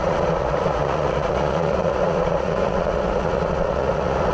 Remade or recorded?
remade